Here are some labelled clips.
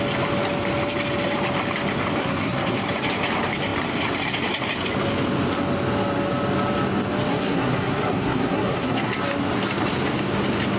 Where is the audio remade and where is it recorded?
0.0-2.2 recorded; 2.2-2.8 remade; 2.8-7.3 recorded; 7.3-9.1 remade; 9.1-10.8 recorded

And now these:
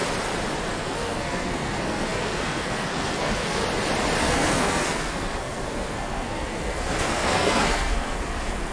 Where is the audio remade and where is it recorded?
0.0-0.7 recorded; 0.7-3.6 remade; 3.6-4.2 recorded; 4.2-8.7 remade

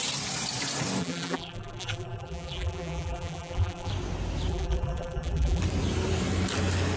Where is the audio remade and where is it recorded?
0.0-1.0 recorded; 1.0-3.9 remade; 3.9-4.5 recorded; 4.5-5.6 remade; 5.6-7.0 recorded

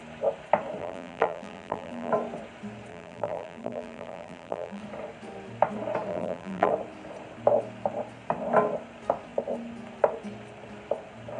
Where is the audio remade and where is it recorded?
0.0-0.8 recorded; 0.8-2.1 remade; 2.1-2.9 recorded; 2.9-4.8 remade; 4.8-6.1 recorded; 6.1-6.7 remade; 6.7-11.4 recorded

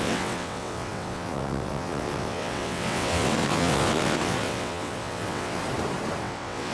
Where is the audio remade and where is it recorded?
0.0-5.6 remade; 5.6-6.2 recorded; 6.2-6.7 remade

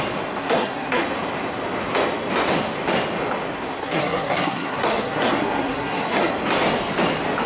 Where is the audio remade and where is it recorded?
0.0-0.4 recorded; 0.4-1.0 remade; 1.0-3.8 recorded; 3.8-6.3 remade; 6.3-7.5 recorded

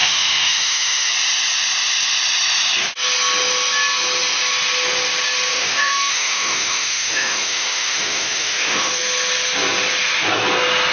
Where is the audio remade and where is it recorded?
0.0-1.1 remade; 1.1-5.5 recorded; 5.5-8.9 remade; 8.9-10.9 recorded

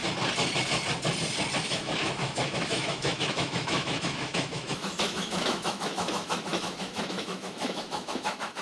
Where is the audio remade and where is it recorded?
0.0-1.6 recorded; 1.6-8.6 remade